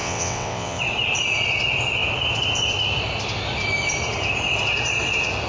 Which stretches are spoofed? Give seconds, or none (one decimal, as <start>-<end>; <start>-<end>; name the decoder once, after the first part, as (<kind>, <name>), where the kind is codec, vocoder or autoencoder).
0.0-0.8 (vocoder, WaveNeXt)

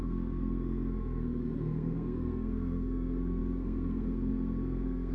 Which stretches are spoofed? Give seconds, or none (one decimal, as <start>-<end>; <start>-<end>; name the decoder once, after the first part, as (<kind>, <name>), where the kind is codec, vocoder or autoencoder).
0.0-5.1 (codec, SNAC)